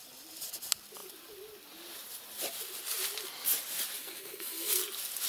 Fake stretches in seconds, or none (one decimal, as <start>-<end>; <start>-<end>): 4.0-4.8